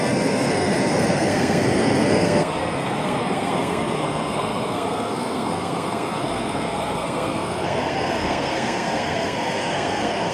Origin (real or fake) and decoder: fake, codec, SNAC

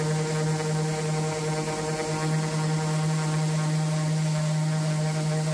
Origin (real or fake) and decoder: real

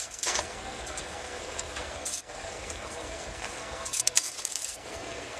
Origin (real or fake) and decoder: fake, codec, SNAC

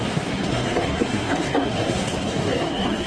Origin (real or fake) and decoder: fake, codec, SNAC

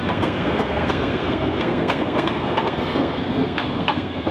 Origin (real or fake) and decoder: fake, codec, SNAC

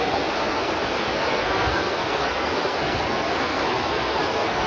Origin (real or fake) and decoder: fake, codec, SNAC